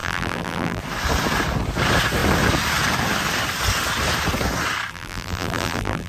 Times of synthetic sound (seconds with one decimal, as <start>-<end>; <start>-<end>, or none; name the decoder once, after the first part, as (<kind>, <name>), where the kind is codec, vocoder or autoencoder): 0.0-0.8 (vocoder, BigVGAN v2); 4.9-6.1